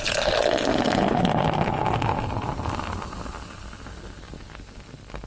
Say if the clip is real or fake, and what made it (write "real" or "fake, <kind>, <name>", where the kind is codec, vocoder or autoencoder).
real